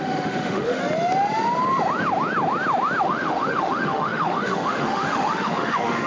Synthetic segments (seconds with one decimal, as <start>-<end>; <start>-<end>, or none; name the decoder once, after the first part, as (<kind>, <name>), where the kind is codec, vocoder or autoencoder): 0.0-0.8 (autoencoder, DAC-VAE); 3.0-6.1